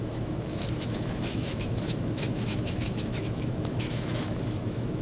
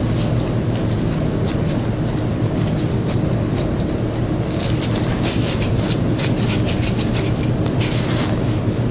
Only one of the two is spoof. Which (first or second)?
first